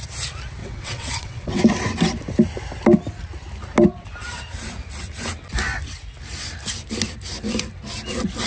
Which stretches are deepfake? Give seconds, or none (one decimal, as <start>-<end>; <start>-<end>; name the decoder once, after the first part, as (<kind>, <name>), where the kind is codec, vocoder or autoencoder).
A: 0.6-1.6 (vocoder, WaveNeXt)